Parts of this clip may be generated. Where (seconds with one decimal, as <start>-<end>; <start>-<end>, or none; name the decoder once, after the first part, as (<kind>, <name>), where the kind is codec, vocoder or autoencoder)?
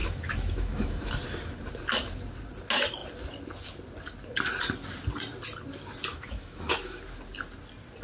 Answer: 0.0-1.1 (autoencoder, DAC-VAE); 6.1-7.0